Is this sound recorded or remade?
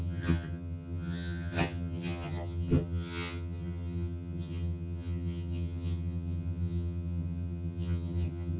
remade